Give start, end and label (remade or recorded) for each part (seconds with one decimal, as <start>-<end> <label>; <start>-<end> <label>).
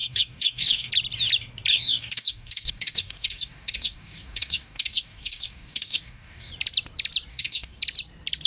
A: 0.0-0.9 remade; 0.9-1.7 recorded; 1.7-6.5 remade; 6.5-7.3 recorded; 7.3-7.8 remade; 7.8-8.5 recorded